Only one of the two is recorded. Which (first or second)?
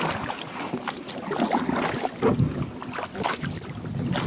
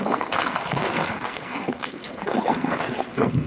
first